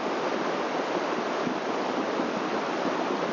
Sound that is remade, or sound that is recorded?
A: recorded